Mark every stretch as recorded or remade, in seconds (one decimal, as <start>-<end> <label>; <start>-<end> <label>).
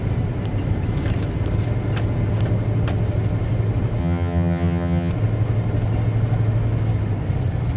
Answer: 0.0-4.0 recorded; 4.0-5.1 remade; 5.1-7.8 recorded